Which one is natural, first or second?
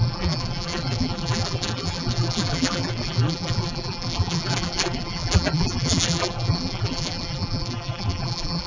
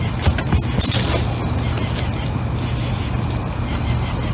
second